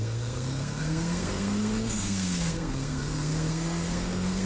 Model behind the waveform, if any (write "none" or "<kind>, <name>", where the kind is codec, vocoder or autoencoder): codec, SNAC